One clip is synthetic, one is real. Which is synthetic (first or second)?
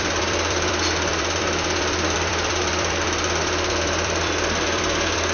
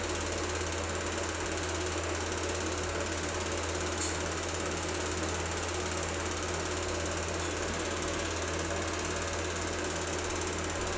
first